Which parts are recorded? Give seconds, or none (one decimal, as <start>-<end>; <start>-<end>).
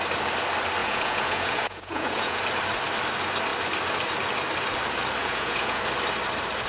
0.0-0.8; 2.4-5.2; 5.8-6.7